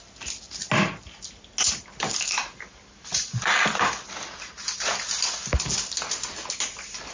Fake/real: real